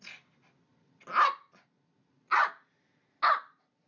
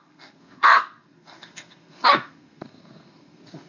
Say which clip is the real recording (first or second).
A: first